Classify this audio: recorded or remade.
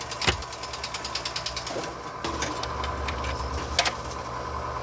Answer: recorded